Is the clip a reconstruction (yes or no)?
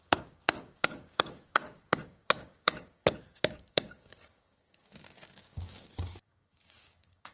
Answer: yes